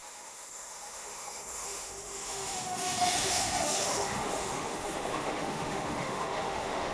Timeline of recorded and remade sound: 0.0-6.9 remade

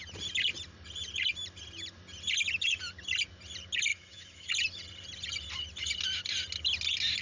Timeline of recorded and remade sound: 0.0-3.9 recorded; 3.9-4.5 remade; 4.5-7.2 recorded

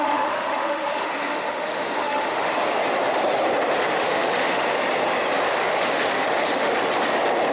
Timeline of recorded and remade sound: 0.0-2.6 remade; 2.6-3.8 recorded; 3.8-4.8 remade; 4.8-5.6 recorded; 5.6-6.7 remade; 6.7-7.5 recorded

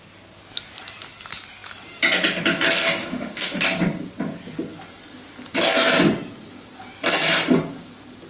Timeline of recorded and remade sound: 0.0-3.0 recorded; 3.0-3.6 remade; 3.6-8.3 recorded

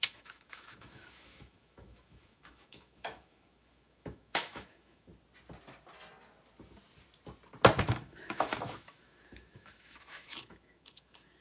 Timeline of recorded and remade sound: 0.0-5.1 remade; 5.1-7.8 recorded; 7.8-11.4 remade